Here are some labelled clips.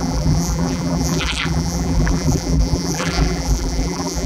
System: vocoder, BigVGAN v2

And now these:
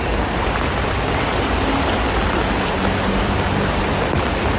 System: none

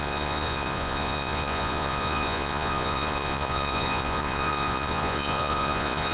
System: vocoder, Vocos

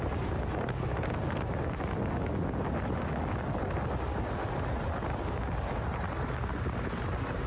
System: none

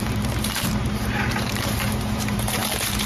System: vocoder, BigVGAN v2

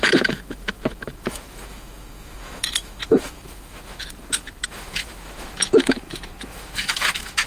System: autoencoder, DAC-VAE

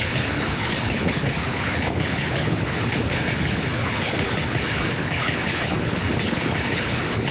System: codec, HILCodec